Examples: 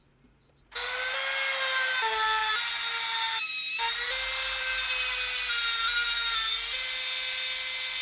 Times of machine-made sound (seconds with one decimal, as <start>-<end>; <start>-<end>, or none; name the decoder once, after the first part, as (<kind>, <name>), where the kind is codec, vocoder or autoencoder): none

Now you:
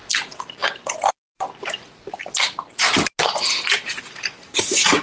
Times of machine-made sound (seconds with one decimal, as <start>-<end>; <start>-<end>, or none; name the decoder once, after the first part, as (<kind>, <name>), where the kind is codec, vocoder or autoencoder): none

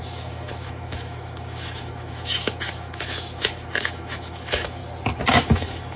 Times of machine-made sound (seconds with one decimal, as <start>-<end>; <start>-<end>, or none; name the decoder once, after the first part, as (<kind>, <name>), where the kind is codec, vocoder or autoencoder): 0.0-4.8 (autoencoder, DAC-VAE); 5.5-6.0

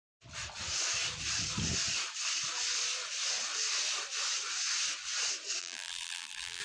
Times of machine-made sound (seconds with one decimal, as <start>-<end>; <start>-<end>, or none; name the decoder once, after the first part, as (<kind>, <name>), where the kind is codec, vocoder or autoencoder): 5.6-6.6 (vocoder, BigVGAN v2)